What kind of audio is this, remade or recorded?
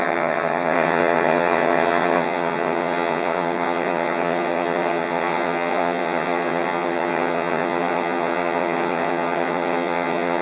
remade